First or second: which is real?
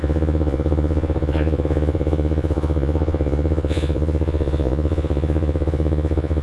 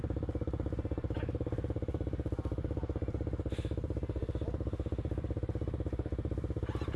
second